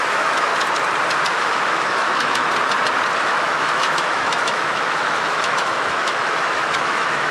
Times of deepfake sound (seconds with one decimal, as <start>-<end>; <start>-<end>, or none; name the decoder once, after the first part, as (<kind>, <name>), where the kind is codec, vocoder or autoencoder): 0.0-0.5 (autoencoder, DAC-VAE); 1.3-2.4; 3.2-7.3